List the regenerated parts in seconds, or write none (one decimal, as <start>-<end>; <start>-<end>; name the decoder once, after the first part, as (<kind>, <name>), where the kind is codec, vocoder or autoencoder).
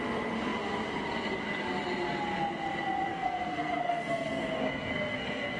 3.1-5.6 (codec, SNAC)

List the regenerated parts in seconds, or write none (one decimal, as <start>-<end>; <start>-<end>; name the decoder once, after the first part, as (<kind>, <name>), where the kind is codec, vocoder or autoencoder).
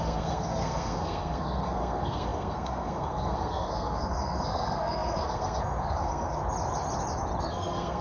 0.0-6.4 (codec, SNAC); 7.4-8.0